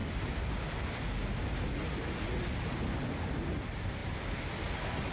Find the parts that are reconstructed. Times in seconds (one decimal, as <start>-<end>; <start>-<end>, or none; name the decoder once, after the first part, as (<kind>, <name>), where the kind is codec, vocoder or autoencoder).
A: none